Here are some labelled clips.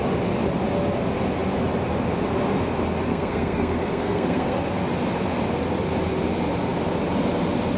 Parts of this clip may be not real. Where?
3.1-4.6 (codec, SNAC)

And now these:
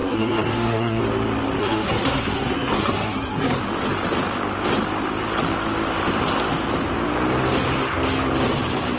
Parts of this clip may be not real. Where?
0.0-1.0 (codec, SNAC); 1.6-3.6